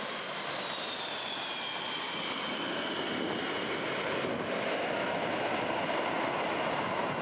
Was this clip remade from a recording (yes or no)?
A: no